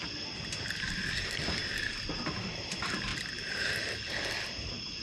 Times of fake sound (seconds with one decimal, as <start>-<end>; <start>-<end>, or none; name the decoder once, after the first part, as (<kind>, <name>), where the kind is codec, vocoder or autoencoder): none